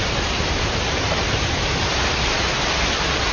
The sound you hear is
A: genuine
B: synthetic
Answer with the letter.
B